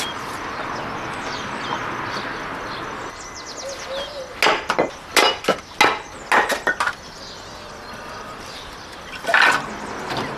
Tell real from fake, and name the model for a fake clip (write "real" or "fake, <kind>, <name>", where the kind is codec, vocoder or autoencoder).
real